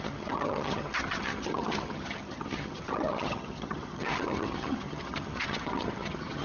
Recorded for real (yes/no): no